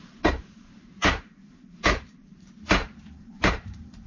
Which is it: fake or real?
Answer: fake